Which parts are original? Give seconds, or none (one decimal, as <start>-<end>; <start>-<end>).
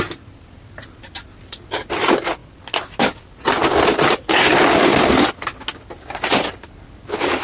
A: 0.0-7.4